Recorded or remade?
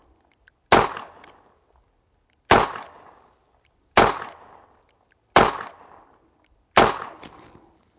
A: recorded